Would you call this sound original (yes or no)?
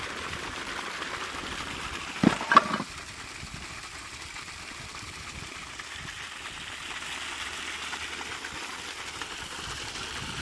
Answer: yes